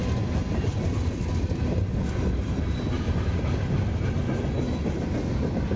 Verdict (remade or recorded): recorded